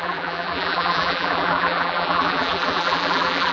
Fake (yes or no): yes